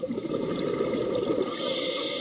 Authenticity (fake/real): fake